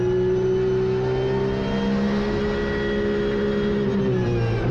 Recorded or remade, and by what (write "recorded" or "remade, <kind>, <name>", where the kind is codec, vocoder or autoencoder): recorded